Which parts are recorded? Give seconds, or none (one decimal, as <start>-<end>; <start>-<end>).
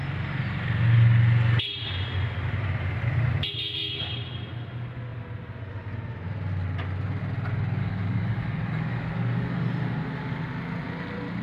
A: 0.0-7.8; 9.7-11.4